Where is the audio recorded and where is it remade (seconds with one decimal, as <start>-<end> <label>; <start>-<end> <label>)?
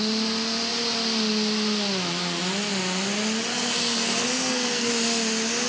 0.0-3.5 recorded; 3.5-4.9 remade; 4.9-5.7 recorded